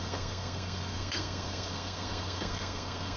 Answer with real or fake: fake